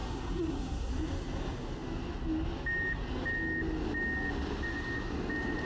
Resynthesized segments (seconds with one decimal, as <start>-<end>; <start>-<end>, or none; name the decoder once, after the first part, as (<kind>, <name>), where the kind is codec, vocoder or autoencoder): 0.0-0.9 (codec, SNAC)

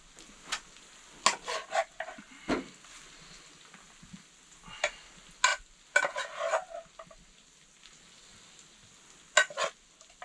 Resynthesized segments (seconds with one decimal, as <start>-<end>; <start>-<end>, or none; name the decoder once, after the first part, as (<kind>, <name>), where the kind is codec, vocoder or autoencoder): none

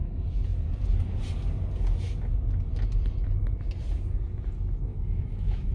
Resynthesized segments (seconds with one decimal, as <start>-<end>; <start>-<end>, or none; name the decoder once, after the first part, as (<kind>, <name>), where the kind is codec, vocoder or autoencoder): 4.9-5.7 (autoencoder, DAC-VAE)

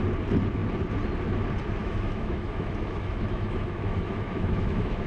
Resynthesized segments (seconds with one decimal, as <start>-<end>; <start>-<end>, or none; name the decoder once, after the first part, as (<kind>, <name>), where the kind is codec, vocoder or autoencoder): 1.8-5.1 (autoencoder, DAC-VAE)

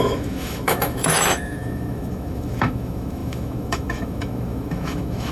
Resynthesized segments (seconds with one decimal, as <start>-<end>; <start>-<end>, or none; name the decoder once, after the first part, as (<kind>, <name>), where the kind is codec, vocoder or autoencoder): 0.0-5.3 (autoencoder, DAC-VAE)

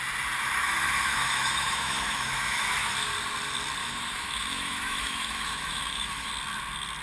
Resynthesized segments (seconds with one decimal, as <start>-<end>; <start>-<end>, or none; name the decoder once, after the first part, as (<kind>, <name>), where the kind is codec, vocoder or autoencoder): 0.6-2.9 (autoencoder, DAC-VAE); 3.8-6.3

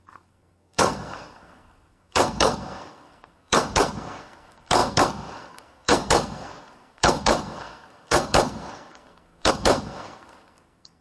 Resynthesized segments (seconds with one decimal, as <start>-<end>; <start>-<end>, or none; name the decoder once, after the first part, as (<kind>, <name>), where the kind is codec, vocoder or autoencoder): 0.0-11.0 (codec, SNAC)